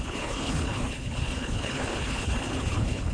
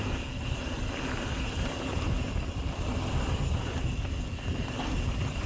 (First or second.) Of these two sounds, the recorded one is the second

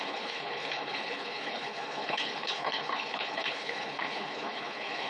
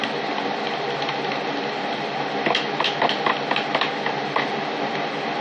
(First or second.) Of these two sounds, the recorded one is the second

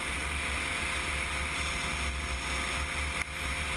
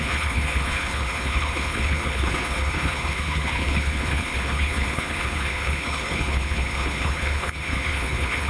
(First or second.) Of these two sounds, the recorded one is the first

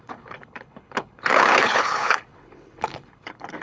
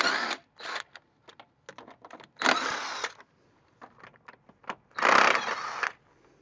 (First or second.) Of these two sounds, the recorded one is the second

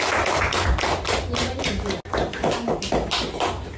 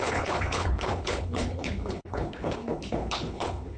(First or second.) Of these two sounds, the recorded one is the first